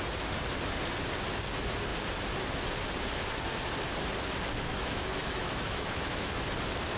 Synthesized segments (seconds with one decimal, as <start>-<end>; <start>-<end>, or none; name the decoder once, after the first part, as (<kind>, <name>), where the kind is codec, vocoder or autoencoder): 4.7-6.4 (autoencoder, DAC-VAE)